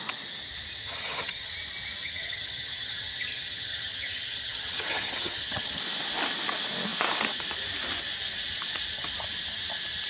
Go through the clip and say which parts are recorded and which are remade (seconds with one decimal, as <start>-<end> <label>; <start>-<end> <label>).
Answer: 0.0-0.8 recorded; 0.8-1.5 remade; 1.5-2.0 recorded; 2.0-5.8 remade; 5.8-10.1 recorded